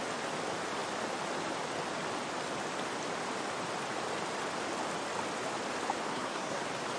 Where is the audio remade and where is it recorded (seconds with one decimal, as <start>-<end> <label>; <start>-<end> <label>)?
0.0-6.1 recorded; 6.1-6.6 remade; 6.6-7.0 recorded